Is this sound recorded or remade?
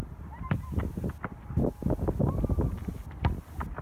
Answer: recorded